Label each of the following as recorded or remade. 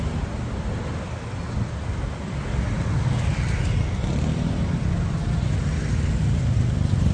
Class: recorded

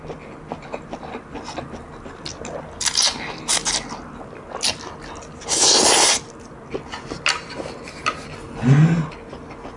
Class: recorded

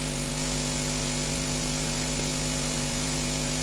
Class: remade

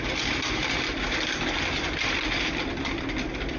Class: recorded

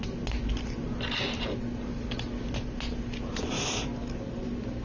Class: recorded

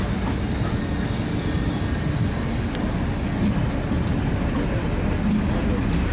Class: recorded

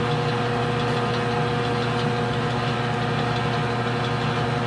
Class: recorded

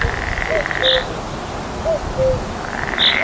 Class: recorded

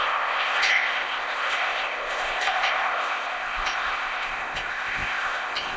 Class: remade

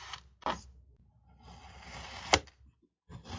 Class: recorded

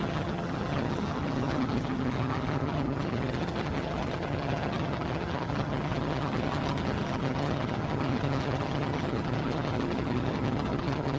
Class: remade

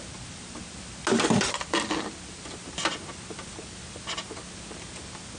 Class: recorded